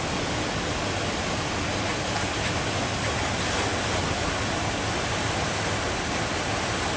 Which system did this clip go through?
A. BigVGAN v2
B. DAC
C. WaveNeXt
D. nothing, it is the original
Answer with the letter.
D